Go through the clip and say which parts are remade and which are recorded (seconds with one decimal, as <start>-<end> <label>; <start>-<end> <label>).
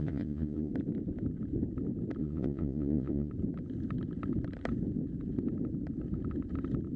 0.0-0.7 remade; 0.7-2.2 recorded; 2.2-3.3 remade; 3.3-7.0 recorded